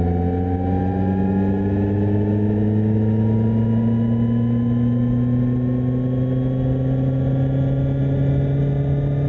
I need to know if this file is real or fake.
real